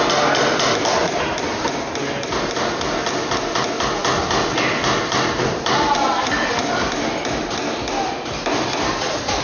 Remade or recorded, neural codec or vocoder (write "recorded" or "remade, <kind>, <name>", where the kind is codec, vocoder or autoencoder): recorded